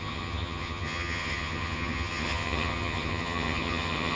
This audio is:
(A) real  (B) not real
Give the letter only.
B